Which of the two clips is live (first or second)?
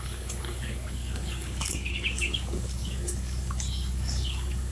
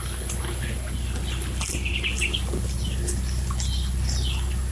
second